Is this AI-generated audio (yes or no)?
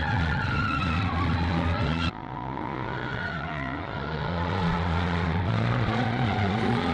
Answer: yes